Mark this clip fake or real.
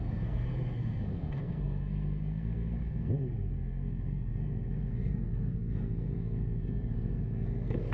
fake